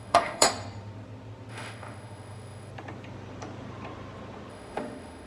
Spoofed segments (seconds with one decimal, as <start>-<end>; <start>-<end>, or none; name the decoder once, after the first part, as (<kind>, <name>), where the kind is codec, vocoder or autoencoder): 0.0-0.5 (autoencoder, DAC-VAE); 1.5-2.7; 4.5-5.3